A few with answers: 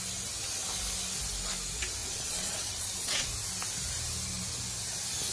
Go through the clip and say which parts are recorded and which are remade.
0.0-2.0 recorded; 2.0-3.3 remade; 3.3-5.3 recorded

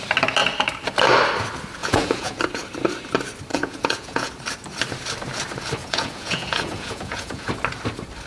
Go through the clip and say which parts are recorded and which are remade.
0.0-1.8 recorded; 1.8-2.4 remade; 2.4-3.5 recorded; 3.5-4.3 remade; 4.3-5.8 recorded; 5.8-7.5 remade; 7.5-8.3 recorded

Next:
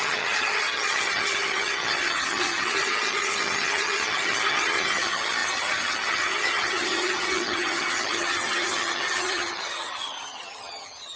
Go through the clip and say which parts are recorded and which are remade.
0.0-11.2 remade

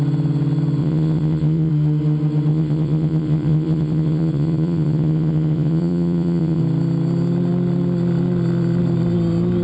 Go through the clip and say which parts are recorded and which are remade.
0.0-0.8 recorded; 0.8-1.7 remade; 1.7-2.5 recorded; 2.5-6.6 remade; 6.6-9.6 recorded